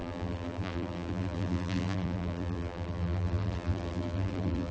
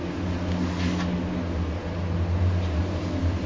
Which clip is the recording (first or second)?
second